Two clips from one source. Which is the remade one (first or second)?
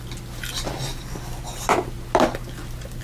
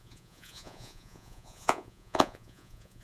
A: second